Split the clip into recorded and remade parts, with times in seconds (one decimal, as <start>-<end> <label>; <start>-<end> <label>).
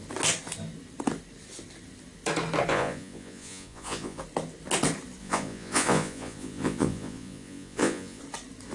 0.0-2.7 recorded; 2.7-4.2 remade; 4.2-5.2 recorded; 5.2-8.2 remade; 8.2-8.7 recorded